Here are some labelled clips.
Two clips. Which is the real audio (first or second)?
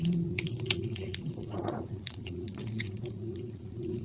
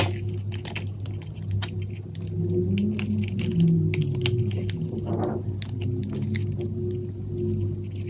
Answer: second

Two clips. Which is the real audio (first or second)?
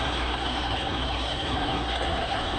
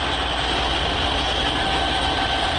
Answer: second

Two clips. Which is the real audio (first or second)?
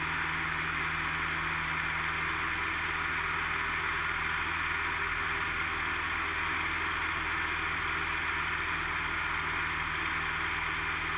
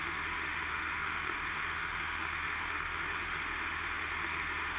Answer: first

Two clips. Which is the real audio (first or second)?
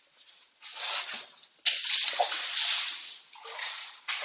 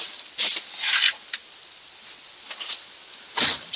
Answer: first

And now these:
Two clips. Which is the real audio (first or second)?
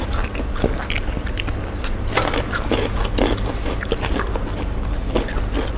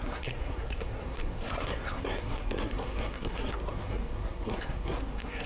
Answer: first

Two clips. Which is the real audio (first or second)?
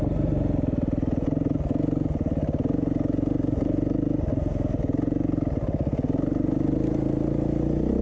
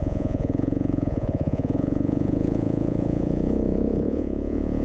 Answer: first